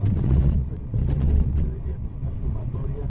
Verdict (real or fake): fake